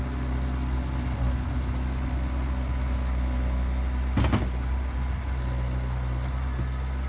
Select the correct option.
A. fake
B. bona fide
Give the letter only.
B